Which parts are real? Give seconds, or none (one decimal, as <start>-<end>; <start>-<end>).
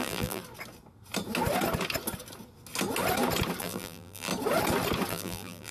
0.4-3.6; 4.3-5.1